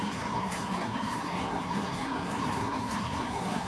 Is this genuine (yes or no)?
no